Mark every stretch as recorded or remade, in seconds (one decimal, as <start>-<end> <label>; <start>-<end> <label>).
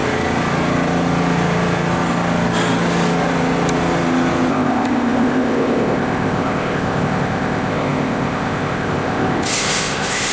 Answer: 0.0-4.5 recorded; 4.5-10.3 remade